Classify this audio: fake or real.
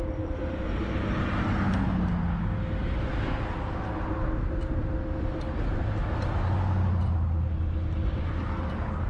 real